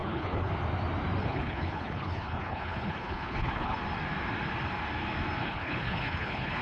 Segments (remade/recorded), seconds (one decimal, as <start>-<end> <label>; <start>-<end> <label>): 0.0-0.5 remade; 0.5-1.2 recorded; 1.2-3.8 remade; 3.8-5.4 recorded; 5.4-6.6 remade